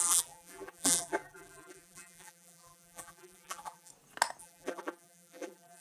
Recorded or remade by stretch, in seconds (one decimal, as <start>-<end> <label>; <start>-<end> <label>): 0.0-3.9 remade; 3.9-4.4 recorded; 4.4-5.8 remade